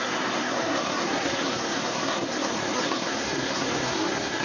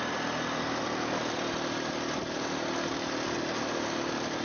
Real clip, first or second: second